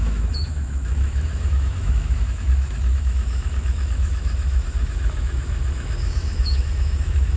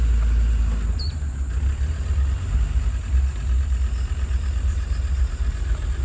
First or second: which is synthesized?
first